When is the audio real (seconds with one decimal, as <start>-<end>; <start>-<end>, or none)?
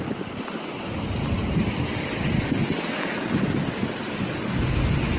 0.0-5.2